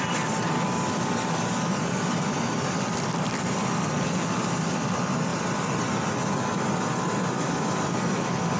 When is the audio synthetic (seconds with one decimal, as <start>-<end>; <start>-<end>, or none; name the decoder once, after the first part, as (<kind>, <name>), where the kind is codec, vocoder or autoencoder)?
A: 0.0-5.3 (vocoder, BigVGAN v2); 7.4-8.6